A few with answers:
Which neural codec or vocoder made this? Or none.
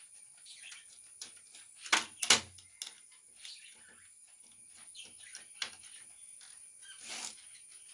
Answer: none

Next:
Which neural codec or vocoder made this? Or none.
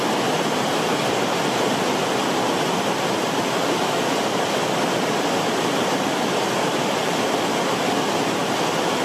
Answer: none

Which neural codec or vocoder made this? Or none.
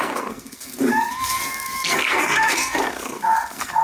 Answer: codec, SNAC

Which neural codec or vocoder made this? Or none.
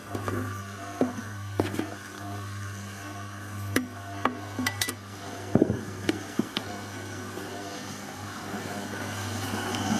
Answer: codec, SNAC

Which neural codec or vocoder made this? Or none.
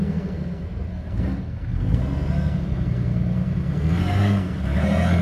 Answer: codec, SNAC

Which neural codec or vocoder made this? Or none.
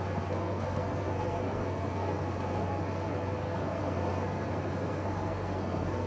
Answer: codec, SNAC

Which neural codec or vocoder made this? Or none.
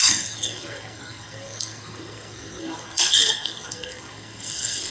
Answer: codec, SNAC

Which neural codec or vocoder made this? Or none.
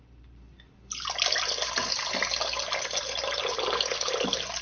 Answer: none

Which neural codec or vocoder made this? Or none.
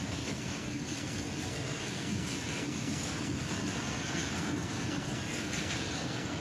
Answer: codec, SNAC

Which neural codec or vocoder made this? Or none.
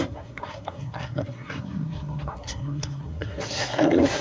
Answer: codec, SNAC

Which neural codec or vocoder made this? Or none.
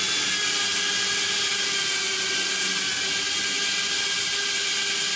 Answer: none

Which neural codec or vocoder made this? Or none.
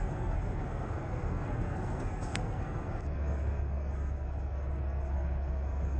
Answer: codec, SNAC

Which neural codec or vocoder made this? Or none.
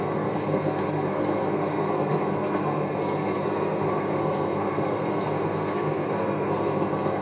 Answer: codec, SNAC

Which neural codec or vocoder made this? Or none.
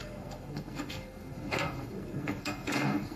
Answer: codec, SNAC